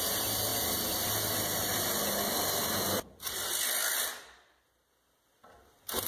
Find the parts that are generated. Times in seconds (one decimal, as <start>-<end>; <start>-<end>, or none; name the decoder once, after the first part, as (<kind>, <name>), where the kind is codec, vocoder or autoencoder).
none